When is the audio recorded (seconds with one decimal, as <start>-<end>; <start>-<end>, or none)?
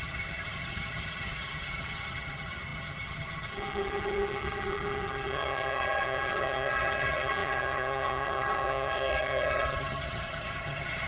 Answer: none